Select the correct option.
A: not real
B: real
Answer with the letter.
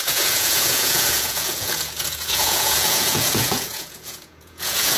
A